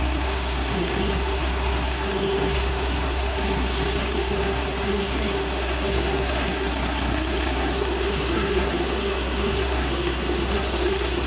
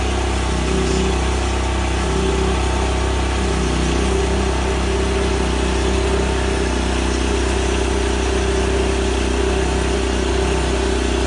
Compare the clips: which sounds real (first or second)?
second